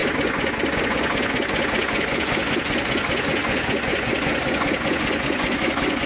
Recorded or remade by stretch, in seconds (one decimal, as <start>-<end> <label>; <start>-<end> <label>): 0.0-6.1 remade